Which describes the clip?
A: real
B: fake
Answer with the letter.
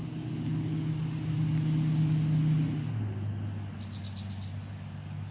A